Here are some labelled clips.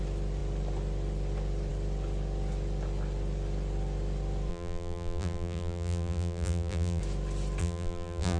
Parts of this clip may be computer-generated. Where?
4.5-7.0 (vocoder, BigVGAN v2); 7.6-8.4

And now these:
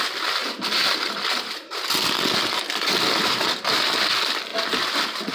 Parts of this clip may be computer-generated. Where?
0.4-1.5 (vocoder, BigVGAN v2)

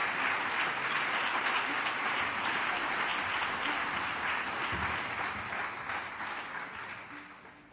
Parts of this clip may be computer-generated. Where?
2.4-3.1 (vocoder, BigVGAN v2)